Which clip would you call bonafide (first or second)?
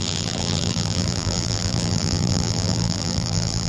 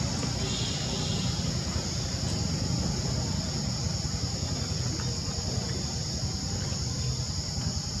second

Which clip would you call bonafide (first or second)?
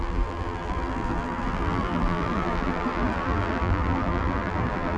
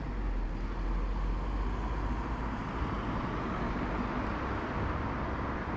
second